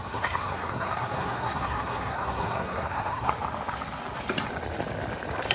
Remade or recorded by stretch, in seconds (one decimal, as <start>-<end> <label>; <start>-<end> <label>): 0.0-3.3 remade; 3.3-5.5 recorded